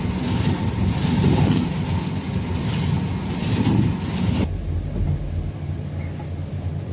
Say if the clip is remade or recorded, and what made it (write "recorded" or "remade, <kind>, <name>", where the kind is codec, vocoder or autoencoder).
recorded